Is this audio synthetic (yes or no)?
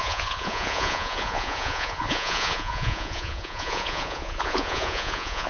yes